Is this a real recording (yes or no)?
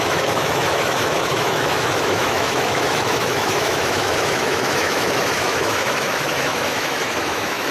no